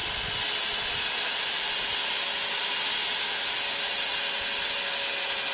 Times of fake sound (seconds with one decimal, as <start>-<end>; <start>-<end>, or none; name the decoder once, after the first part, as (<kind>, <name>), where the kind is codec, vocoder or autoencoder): none